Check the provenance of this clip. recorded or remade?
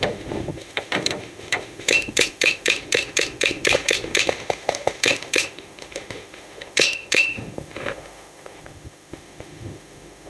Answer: remade